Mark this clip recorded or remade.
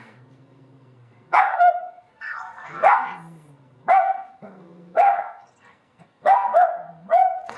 remade